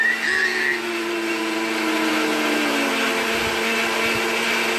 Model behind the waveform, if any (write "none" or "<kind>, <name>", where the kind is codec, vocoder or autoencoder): none